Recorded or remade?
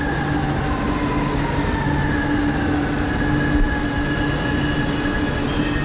recorded